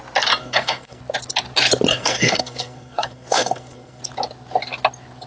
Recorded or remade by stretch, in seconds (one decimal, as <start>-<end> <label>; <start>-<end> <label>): 0.0-0.4 recorded; 0.4-1.0 remade; 1.0-1.9 recorded; 1.9-4.0 remade; 4.0-5.3 recorded